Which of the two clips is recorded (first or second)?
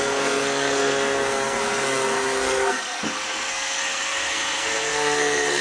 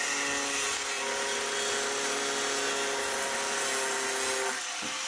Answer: second